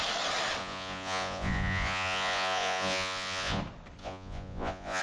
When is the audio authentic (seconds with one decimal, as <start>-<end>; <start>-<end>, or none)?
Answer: 0.0-0.6; 3.6-4.0